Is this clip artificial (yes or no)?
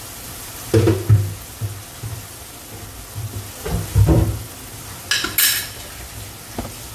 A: no